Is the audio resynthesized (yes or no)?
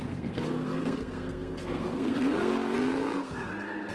yes